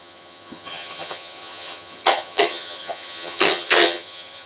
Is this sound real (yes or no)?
no